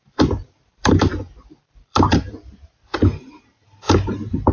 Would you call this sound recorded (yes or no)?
no